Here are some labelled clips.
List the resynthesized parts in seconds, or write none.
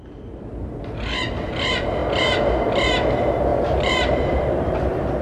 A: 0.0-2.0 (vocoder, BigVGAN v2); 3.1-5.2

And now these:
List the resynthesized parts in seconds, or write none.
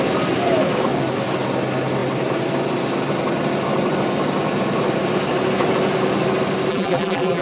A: 6.7-7.4 (vocoder, BigVGAN v2)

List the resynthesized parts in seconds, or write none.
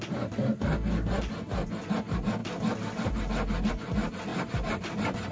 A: none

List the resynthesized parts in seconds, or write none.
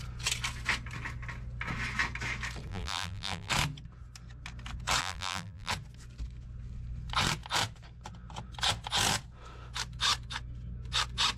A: 2.7-3.5 (vocoder, BigVGAN v2); 5.0-5.7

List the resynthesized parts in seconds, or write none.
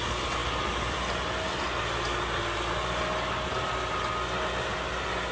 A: none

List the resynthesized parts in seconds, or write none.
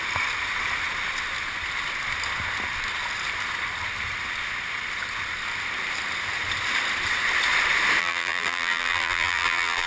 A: 8.0-9.9 (vocoder, BigVGAN v2)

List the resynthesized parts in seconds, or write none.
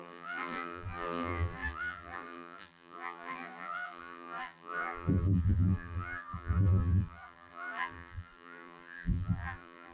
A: 0.0-9.9 (vocoder, BigVGAN v2)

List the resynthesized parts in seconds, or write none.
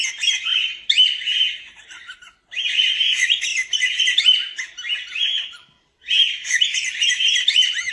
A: 0.0-7.9 (vocoder, BigVGAN v2)